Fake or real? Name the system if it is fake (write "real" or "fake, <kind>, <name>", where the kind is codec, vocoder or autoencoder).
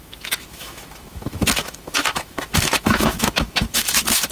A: fake, autoencoder, DAC-VAE